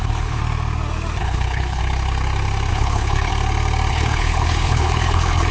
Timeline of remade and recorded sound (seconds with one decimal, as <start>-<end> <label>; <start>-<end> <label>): 0.0-0.4 remade; 0.4-1.2 recorded; 1.2-1.8 remade; 1.8-2.7 recorded; 2.7-3.3 remade; 3.3-3.9 recorded; 3.9-5.5 remade